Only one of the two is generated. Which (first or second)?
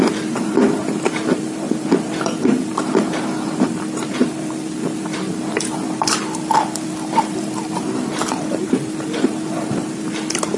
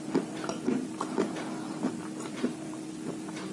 first